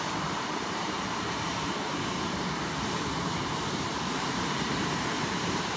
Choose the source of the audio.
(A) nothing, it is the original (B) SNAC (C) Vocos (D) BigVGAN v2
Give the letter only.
D